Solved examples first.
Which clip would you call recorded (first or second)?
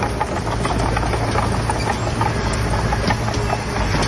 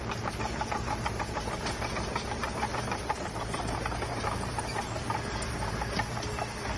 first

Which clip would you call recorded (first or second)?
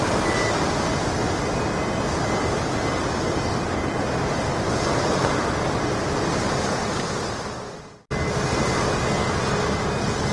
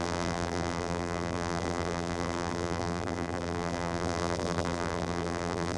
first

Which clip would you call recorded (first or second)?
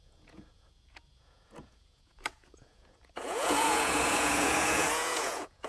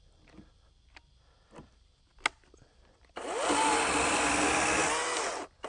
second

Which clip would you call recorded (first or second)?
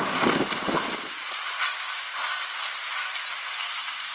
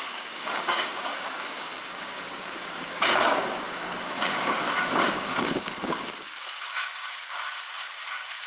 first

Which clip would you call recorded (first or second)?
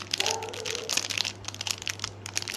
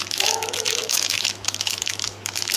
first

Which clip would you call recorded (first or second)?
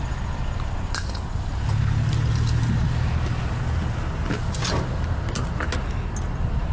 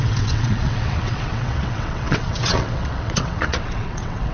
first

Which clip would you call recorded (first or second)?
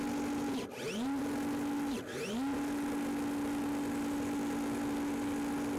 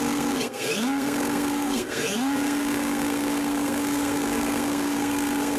first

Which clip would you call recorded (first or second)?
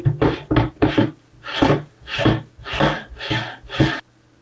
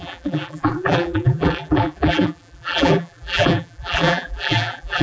first